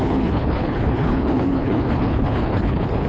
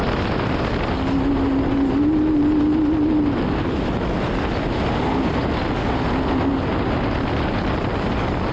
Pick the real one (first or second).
second